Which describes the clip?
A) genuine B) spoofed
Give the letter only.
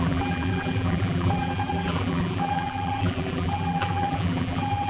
B